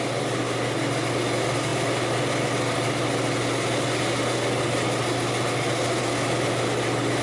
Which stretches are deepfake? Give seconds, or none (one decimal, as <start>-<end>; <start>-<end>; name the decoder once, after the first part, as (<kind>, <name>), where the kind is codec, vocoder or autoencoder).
none